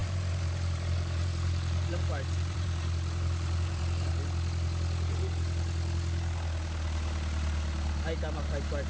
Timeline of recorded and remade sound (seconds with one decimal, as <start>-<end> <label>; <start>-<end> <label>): 0.0-4.1 remade; 4.1-8.9 recorded